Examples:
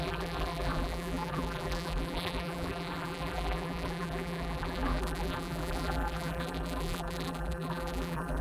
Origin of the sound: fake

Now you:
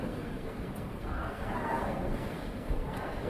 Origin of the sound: fake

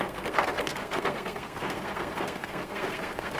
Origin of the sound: fake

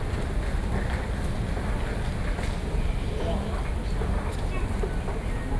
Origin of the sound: real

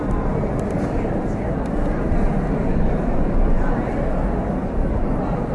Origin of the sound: real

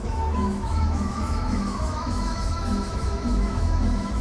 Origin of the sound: fake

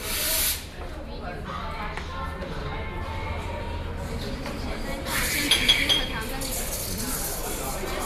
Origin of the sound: real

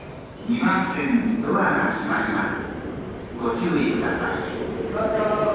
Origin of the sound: fake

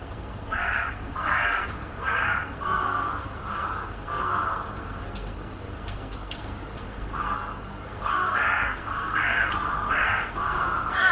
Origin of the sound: fake